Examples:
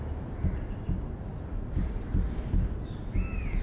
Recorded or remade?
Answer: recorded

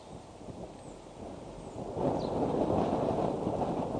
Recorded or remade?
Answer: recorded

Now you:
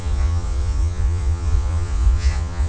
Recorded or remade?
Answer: remade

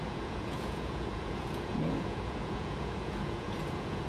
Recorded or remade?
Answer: remade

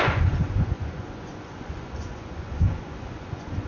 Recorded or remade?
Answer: remade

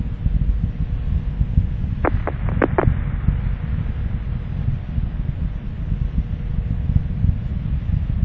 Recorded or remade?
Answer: recorded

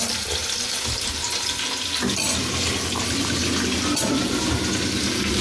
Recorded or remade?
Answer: recorded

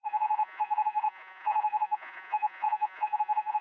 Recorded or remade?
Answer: remade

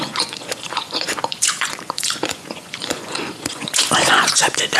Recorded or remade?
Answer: remade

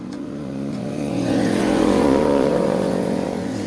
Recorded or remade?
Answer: remade